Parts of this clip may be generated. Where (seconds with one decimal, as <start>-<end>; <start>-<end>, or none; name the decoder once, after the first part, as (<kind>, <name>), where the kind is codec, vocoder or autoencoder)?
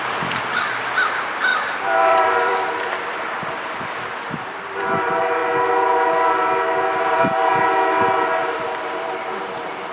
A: 0.0-5.4 (vocoder, BigVGAN v2); 7.0-7.5; 8.4-9.9